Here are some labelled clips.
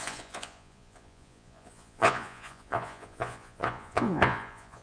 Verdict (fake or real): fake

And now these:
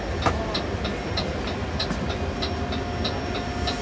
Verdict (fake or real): real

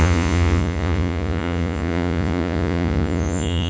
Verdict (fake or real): fake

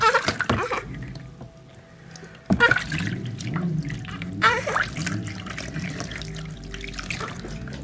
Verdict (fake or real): real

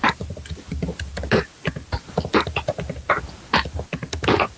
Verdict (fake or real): real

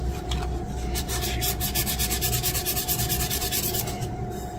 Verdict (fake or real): real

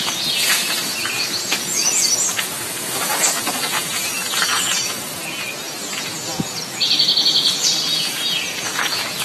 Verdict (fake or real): fake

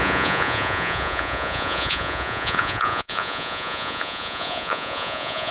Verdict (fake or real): fake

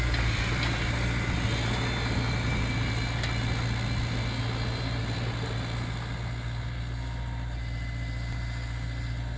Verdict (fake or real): real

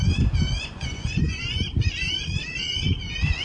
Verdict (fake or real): fake